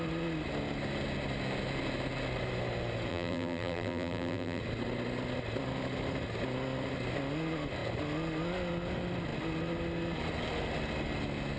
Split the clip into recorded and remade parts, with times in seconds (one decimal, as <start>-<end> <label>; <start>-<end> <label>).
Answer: 0.0-3.1 recorded; 3.1-4.6 remade; 4.6-11.6 recorded